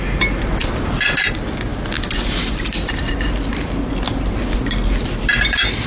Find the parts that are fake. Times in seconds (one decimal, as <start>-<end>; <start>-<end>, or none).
0.6-1.2

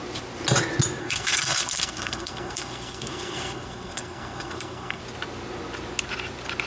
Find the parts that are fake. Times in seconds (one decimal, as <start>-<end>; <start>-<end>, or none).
1.0-5.0

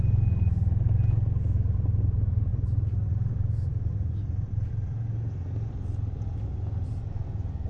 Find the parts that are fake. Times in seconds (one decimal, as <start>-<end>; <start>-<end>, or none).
none

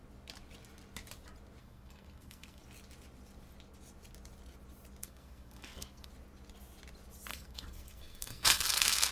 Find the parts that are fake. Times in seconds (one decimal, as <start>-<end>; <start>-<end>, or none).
1.6-2.6; 5.0-6.1; 7.3-9.1